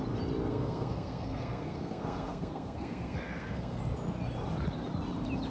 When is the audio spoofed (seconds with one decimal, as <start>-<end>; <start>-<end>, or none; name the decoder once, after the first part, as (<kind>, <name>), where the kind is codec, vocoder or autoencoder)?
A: 0.5-3.8 (codec, SNAC)